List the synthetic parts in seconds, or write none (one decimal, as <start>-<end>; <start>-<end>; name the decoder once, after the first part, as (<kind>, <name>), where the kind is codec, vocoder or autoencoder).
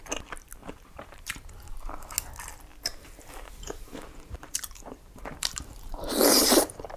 0.6-1.4 (vocoder, BigVGAN v2); 2.7-7.0